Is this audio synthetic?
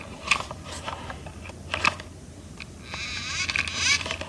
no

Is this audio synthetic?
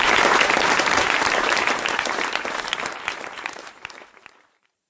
yes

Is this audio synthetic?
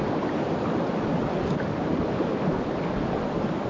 no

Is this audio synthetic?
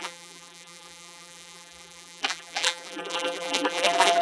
yes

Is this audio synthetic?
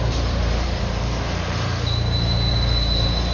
yes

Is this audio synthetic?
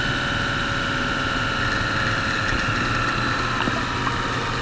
no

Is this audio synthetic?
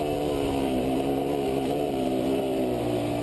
yes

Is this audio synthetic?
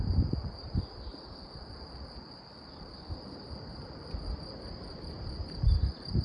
yes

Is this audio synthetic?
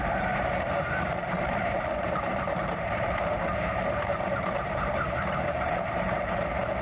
yes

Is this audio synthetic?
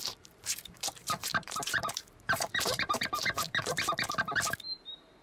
yes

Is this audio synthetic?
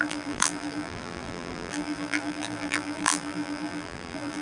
yes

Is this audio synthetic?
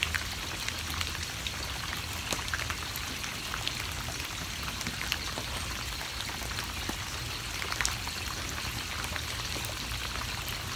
no